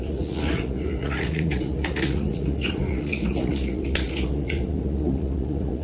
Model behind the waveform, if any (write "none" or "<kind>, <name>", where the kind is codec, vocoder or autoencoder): vocoder, Vocos